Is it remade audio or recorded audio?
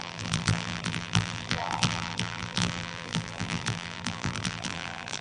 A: remade